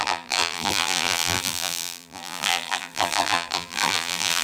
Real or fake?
fake